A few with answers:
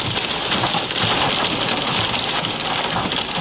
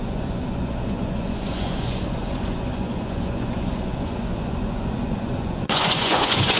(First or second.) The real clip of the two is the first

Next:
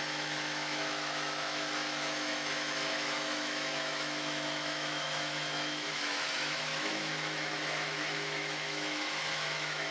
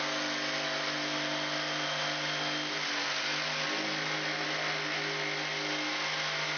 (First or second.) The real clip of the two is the second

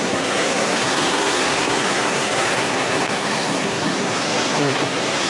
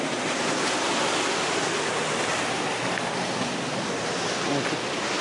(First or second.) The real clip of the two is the second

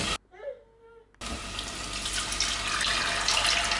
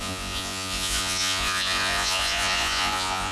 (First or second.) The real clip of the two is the first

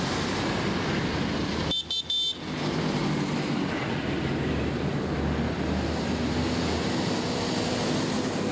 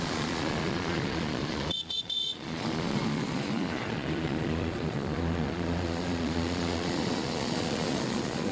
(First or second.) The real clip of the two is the first